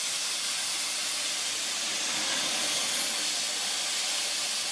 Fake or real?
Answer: real